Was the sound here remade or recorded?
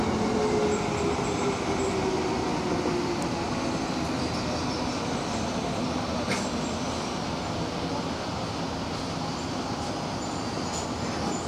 recorded